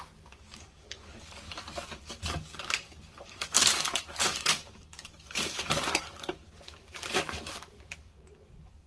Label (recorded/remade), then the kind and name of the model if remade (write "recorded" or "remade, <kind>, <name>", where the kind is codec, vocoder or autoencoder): remade, codec, DAC